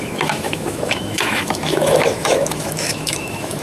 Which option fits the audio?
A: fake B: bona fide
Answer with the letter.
A